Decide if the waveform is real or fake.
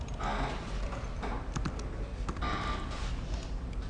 real